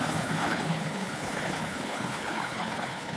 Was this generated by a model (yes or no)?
yes